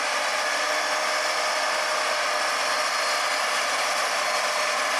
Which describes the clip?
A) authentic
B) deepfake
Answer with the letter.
A